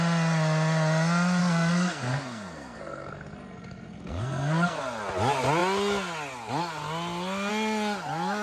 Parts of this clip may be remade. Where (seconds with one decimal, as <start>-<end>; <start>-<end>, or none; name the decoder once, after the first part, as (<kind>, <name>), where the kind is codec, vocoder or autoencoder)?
1.4-4.8 (codec, SNAC)